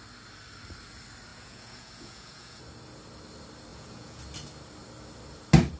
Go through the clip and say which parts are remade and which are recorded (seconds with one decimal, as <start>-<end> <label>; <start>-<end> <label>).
0.0-1.3 recorded; 1.3-2.6 remade; 2.6-3.7 recorded; 3.7-4.2 remade; 4.2-5.8 recorded